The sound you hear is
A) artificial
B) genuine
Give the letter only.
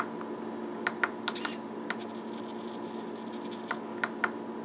B